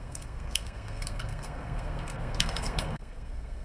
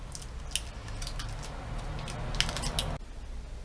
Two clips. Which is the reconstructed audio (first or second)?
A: first